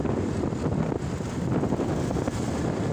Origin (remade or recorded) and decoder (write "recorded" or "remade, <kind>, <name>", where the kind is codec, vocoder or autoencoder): recorded